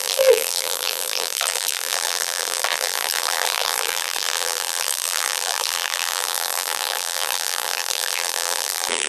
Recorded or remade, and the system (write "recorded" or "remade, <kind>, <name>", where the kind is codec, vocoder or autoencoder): remade, vocoder, BigVGAN v2